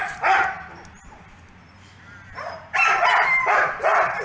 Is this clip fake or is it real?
fake